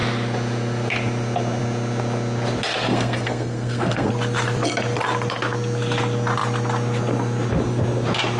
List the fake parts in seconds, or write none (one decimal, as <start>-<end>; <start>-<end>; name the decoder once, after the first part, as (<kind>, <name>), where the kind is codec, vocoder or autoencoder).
2.9-4.1 (codec, SNAC)